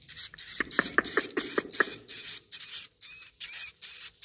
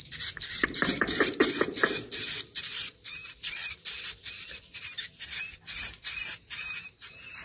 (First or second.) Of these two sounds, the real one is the first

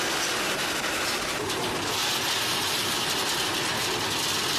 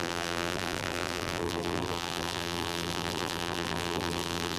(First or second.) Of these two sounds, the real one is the first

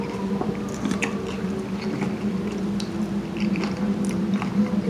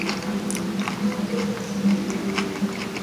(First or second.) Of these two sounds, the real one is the second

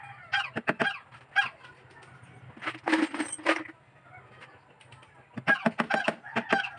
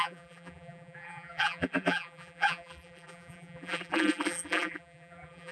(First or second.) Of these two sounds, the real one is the first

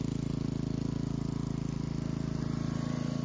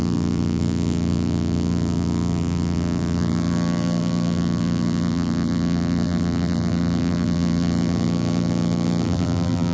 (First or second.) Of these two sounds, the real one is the first